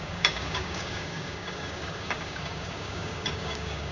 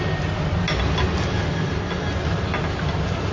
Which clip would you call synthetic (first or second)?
first